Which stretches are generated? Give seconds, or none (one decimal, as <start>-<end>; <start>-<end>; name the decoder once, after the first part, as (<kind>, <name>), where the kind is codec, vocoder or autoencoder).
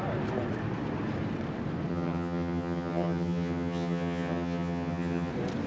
1.9-5.3 (vocoder, HiFi-GAN)